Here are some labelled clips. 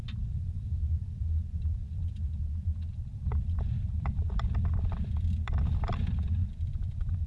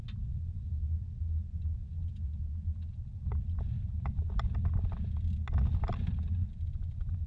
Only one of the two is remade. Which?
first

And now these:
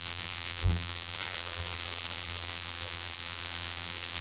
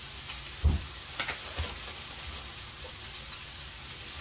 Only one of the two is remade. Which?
first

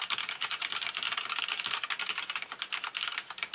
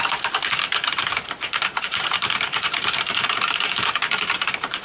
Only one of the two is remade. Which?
second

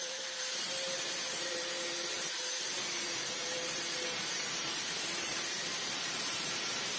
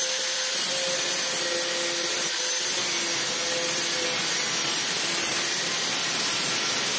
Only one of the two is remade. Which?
first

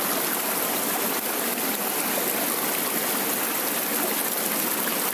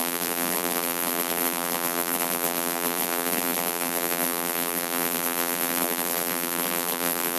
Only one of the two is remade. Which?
second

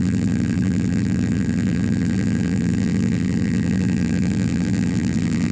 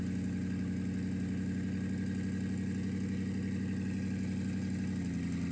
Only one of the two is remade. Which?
first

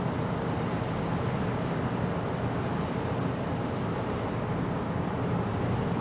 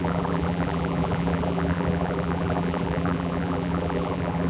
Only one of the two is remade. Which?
second